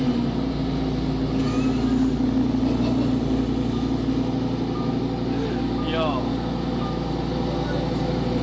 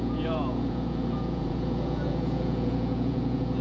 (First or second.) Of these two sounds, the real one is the first